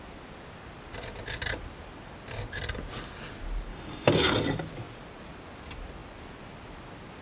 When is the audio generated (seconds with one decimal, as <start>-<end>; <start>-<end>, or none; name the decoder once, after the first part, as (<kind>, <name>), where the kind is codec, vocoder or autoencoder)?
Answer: 3.7-4.3 (codec, DAC)